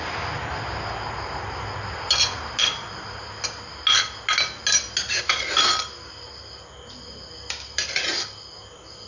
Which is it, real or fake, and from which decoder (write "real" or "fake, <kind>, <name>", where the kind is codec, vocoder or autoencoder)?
real